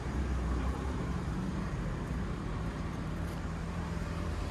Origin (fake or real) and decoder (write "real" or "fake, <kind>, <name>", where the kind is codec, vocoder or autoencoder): fake, vocoder, BigVGAN v2